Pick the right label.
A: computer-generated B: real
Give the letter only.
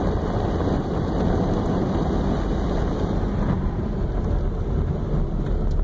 B